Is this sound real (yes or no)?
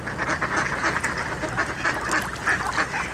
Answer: yes